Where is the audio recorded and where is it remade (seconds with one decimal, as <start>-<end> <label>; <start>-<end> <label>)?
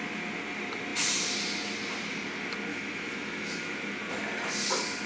0.0-2.7 recorded; 2.7-4.0 remade; 4.0-5.1 recorded